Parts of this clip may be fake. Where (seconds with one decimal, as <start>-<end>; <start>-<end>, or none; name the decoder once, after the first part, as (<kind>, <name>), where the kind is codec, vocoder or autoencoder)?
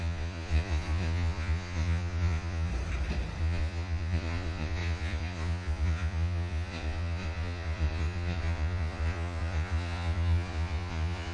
0.0-2.7 (vocoder, Vocos); 3.4-11.3